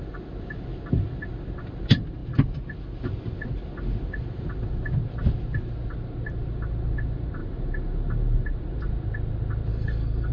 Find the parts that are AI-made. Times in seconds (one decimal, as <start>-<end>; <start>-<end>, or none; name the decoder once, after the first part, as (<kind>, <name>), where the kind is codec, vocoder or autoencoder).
9.7-10.3 (codec, SNAC)